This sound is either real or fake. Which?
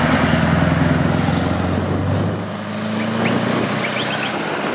real